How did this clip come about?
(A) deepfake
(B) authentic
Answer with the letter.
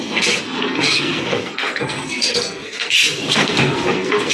A